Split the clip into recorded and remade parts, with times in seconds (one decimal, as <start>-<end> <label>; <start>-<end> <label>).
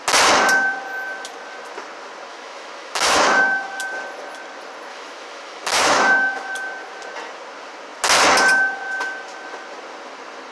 0.0-2.3 recorded; 2.3-3.8 remade; 3.8-4.9 recorded; 4.9-6.5 remade; 6.5-10.5 recorded